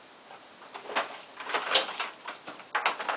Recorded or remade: recorded